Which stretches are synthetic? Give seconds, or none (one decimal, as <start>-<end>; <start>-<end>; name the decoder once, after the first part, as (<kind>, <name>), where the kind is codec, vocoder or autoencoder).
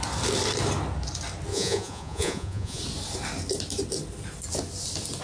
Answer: 1.5-2.8 (vocoder, Vocos)